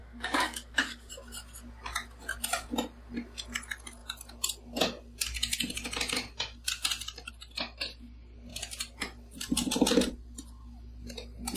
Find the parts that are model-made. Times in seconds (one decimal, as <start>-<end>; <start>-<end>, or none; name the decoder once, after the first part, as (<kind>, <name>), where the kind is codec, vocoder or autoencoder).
0.0-1.1 (codec, DAC)